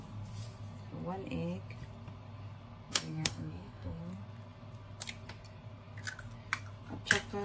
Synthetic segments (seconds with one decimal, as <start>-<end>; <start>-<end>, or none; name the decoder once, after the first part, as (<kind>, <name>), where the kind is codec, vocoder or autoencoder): 2.9-4.0 (codec, DAC)